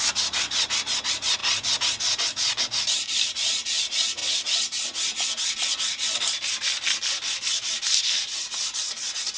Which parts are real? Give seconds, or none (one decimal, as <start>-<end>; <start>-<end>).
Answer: 0.0-9.4